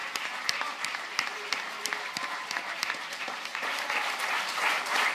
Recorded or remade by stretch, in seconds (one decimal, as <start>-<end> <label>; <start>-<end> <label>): 0.0-5.1 remade